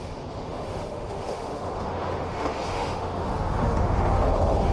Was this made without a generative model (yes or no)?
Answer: no